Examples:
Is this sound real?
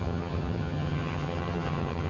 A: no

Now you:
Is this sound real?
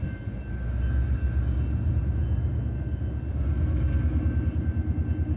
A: yes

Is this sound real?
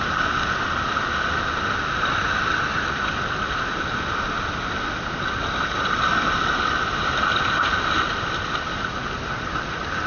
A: yes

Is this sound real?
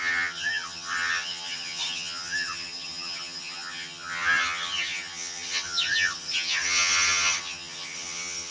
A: no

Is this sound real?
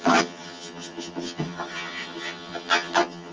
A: no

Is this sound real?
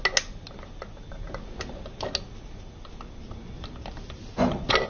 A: yes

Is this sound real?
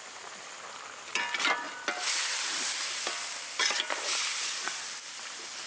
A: yes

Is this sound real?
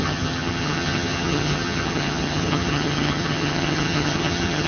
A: no